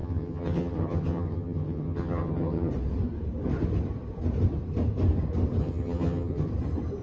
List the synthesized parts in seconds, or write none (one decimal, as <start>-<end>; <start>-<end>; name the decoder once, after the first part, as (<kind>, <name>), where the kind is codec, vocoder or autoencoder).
0.0-2.7 (vocoder, HiFi-GAN); 5.6-6.5